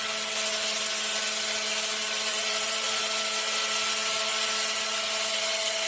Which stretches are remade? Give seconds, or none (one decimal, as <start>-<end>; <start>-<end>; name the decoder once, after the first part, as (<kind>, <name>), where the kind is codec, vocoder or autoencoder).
2.3-3.0 (vocoder, BigVGAN v2)